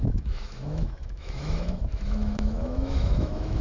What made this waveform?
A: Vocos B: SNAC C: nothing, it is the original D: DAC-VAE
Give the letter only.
D